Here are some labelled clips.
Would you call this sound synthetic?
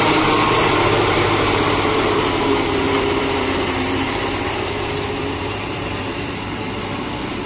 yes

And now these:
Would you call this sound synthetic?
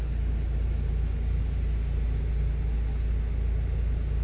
no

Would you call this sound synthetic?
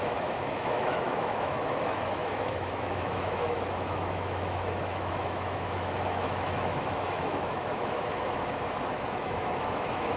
yes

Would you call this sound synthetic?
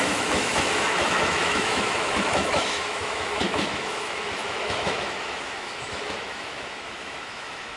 yes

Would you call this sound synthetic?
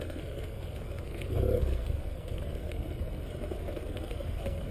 yes